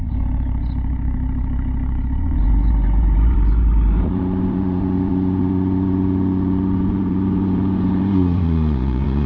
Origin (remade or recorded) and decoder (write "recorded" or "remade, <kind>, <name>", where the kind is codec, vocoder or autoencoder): remade, vocoder, Vocos